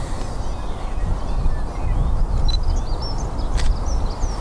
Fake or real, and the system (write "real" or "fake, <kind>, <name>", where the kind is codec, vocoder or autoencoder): real